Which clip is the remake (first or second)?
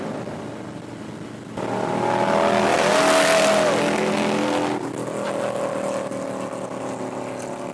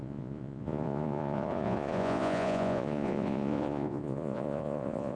second